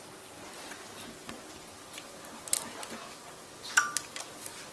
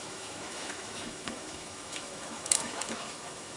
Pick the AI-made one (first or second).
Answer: second